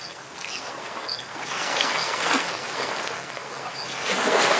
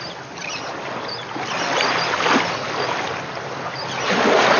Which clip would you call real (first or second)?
second